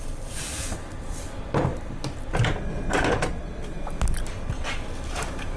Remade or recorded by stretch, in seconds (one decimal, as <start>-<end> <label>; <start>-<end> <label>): 0.0-1.7 remade; 1.7-5.1 recorded; 5.1-5.6 remade